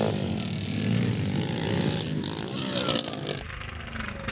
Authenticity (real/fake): real